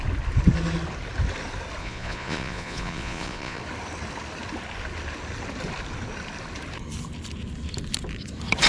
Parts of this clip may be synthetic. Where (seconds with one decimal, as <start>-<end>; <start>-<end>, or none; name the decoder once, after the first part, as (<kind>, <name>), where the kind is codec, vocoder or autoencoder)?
1.8-3.6 (vocoder, Vocos)